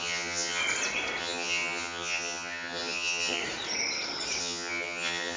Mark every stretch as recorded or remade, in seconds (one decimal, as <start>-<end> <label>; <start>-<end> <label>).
0.0-0.6 remade; 0.6-1.2 recorded; 1.2-3.4 remade; 3.4-4.4 recorded; 4.4-5.4 remade